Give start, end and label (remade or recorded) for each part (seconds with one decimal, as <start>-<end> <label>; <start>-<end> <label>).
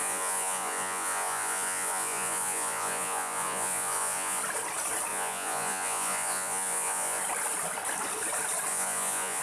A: 0.0-4.4 remade; 4.4-5.1 recorded; 5.1-7.2 remade; 7.2-8.7 recorded; 8.7-9.4 remade